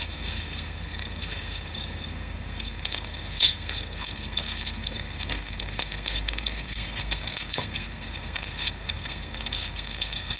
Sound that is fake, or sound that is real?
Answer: fake